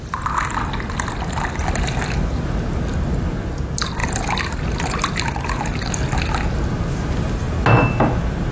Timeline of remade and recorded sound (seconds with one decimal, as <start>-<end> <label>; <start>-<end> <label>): 0.0-8.5 recorded